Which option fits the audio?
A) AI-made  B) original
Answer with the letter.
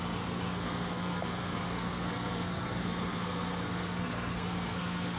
A